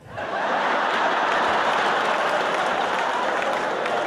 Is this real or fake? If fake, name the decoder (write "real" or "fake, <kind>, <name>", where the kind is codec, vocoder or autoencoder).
real